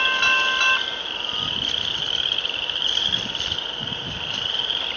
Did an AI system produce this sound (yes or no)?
no